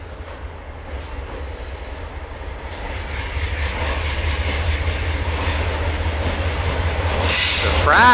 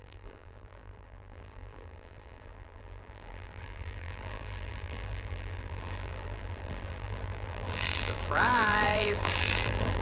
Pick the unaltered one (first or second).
first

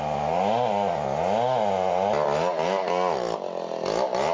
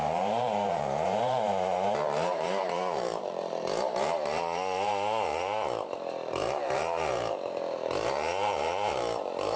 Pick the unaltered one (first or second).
first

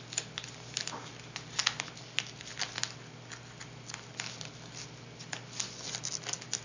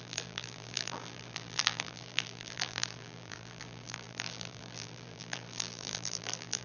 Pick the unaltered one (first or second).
first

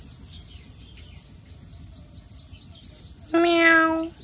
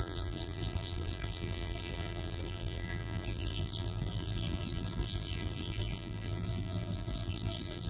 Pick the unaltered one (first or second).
first